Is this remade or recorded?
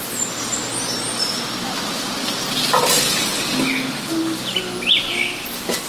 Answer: recorded